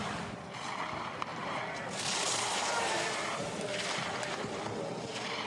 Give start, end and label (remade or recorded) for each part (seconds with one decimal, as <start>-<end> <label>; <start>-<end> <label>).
0.0-1.3 recorded; 1.3-4.6 remade; 4.6-5.5 recorded